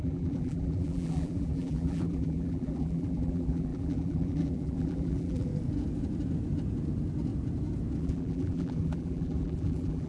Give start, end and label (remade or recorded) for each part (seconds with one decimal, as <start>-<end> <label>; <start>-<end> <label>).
0.0-5.5 remade; 5.5-8.0 recorded; 8.0-10.1 remade

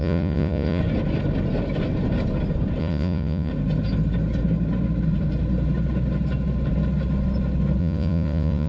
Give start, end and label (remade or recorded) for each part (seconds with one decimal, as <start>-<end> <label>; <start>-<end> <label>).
0.0-0.8 remade; 0.8-2.8 recorded; 2.8-3.5 remade; 3.5-7.8 recorded; 7.8-8.7 remade

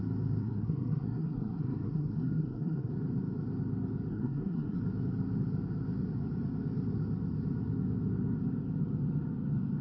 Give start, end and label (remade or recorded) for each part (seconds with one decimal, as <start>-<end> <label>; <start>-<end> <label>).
0.0-0.4 recorded; 0.4-2.9 remade; 2.9-4.1 recorded; 4.1-4.8 remade; 4.8-9.8 recorded

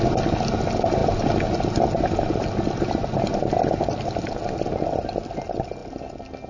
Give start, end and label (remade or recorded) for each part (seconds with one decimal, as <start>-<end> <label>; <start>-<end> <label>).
0.0-6.5 recorded

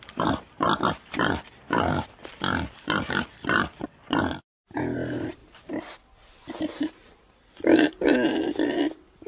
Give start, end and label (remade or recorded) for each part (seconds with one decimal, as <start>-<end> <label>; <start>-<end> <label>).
0.0-5.4 recorded; 5.4-6.0 remade; 6.0-9.3 recorded

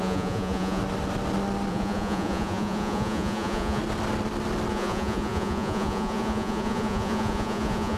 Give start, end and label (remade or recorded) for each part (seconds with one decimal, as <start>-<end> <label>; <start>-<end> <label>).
0.0-0.8 remade; 0.8-1.7 recorded; 1.7-3.8 remade; 3.8-4.7 recorded; 4.7-8.0 remade

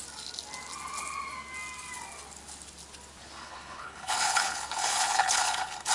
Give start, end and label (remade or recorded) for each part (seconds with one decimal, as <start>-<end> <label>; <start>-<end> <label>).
0.0-3.4 recorded; 3.4-5.9 remade

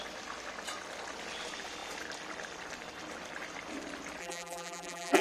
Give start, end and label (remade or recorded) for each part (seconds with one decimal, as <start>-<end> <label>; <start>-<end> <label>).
0.0-4.2 recorded; 4.2-5.2 remade